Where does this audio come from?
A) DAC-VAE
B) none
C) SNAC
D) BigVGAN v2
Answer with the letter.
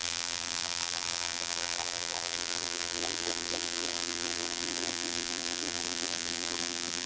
D